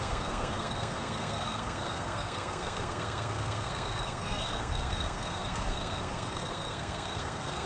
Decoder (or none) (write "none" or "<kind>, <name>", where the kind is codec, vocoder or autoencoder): codec, SNAC